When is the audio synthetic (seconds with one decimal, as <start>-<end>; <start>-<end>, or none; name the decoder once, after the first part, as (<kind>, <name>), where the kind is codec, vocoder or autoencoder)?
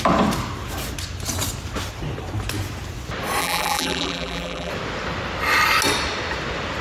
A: 3.4-4.7 (vocoder, BigVGAN v2)